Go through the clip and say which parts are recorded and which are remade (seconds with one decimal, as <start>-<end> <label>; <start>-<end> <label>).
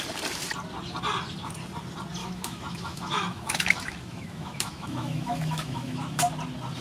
0.0-2.2 recorded; 2.2-6.3 remade; 6.3-6.8 recorded